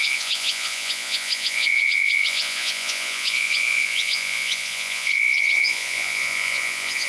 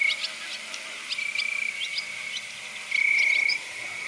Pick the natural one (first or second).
second